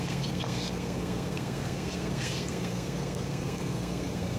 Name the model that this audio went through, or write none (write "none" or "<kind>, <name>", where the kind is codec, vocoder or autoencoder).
codec, SNAC